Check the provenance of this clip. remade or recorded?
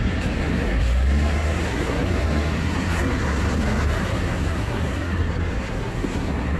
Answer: remade